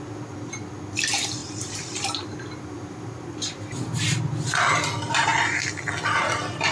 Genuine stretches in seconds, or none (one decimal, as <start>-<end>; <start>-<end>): 0.0-1.4; 4.2-6.7